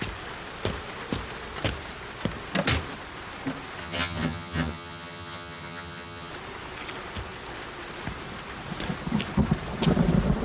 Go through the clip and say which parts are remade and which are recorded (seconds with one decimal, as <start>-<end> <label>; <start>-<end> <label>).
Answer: 0.0-3.8 recorded; 3.8-6.3 remade; 6.3-10.4 recorded